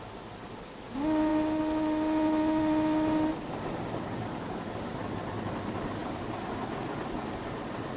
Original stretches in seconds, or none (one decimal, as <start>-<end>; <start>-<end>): 0.0-8.0